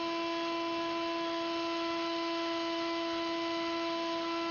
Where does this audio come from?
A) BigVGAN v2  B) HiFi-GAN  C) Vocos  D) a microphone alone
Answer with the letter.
D